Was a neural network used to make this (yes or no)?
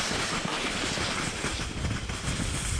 no